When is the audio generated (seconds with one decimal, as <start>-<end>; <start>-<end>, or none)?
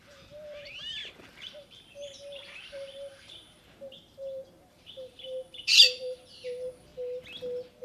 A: 0.0-6.9